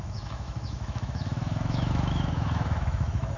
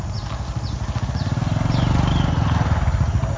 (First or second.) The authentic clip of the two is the second